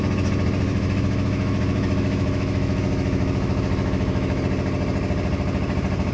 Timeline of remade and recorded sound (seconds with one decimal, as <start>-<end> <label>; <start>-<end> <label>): 0.0-0.7 recorded; 0.7-4.4 remade; 4.4-6.1 recorded